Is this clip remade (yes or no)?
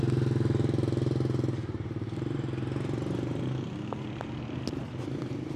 no